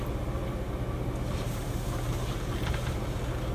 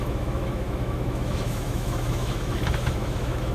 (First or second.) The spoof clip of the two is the second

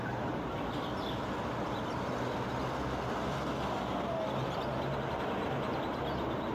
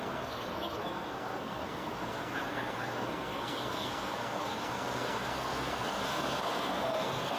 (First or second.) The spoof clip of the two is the second